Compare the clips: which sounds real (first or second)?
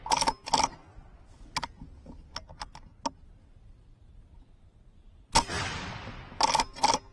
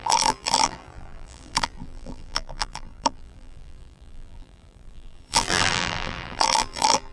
first